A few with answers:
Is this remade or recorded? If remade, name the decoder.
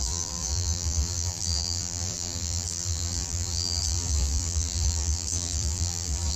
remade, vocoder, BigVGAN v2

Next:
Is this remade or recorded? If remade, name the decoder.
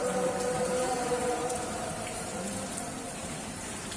remade, vocoder, BigVGAN v2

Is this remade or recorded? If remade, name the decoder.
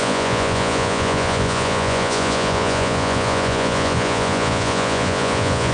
remade, vocoder, Vocos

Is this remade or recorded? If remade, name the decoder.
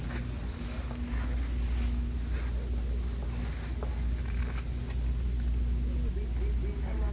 recorded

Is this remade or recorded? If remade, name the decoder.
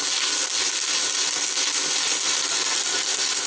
remade, vocoder, BigVGAN v2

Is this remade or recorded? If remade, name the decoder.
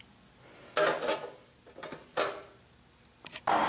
recorded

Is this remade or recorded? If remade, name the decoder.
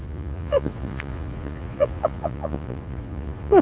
remade, vocoder, Vocos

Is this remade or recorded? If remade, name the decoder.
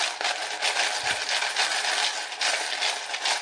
recorded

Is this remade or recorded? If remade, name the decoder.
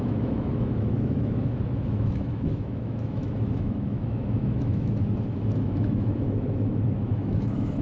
remade, autoencoder, DAC-VAE